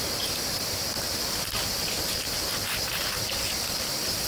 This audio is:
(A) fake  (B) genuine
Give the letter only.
A